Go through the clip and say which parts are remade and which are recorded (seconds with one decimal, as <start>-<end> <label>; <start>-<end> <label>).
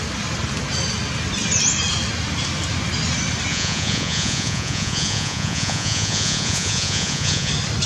0.0-3.5 recorded; 3.5-7.5 remade; 7.5-7.9 recorded